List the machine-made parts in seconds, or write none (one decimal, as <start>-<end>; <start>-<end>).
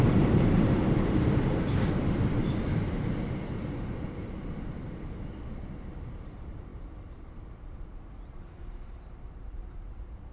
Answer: 0.0-10.3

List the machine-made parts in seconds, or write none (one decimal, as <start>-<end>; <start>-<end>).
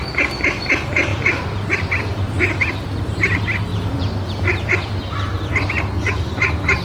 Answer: 1.1-2.4; 3.7-5.6